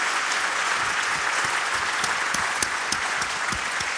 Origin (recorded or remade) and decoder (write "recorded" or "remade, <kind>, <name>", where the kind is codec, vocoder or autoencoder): remade, vocoder, Vocos